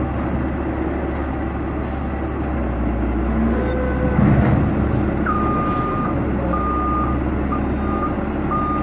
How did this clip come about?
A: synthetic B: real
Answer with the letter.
B